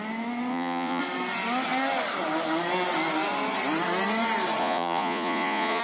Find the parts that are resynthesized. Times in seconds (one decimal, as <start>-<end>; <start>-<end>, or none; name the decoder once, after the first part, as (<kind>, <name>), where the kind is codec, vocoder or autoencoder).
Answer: 0.5-1.0 (vocoder, Vocos); 4.6-5.8